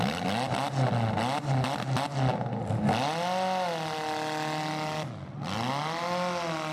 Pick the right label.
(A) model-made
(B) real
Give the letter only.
B